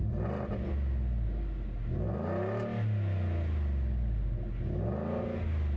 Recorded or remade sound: recorded